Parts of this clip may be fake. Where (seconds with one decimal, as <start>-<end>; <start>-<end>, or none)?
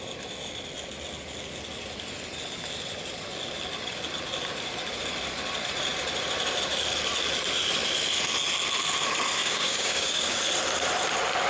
9.4-10.4